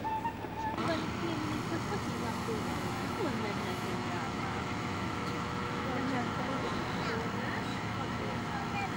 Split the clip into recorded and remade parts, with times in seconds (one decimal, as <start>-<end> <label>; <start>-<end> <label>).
0.0-2.7 recorded; 2.7-6.8 remade; 6.8-7.7 recorded; 7.7-8.6 remade; 8.6-9.0 recorded